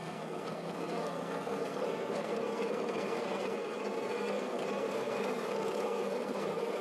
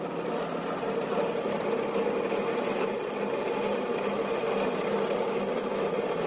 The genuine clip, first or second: second